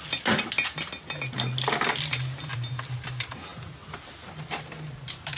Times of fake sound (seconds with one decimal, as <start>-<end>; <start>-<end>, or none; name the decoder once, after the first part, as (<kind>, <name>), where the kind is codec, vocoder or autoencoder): 2.5-3.1 (vocoder, BigVGAN v2); 3.5-4.5